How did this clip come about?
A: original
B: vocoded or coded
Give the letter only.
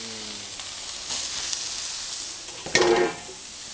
A